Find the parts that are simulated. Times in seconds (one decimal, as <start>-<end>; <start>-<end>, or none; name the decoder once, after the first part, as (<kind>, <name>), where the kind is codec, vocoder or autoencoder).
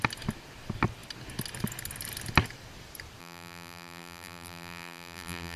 3.2-5.6 (vocoder, BigVGAN v2)